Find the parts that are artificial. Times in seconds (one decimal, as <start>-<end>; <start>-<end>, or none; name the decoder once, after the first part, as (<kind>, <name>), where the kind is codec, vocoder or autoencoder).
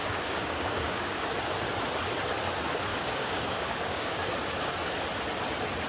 0.0-1.3 (codec, DAC); 2.9-4.3